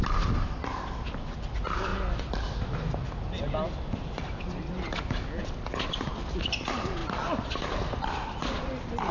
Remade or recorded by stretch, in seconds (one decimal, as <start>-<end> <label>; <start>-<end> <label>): 0.0-9.1 recorded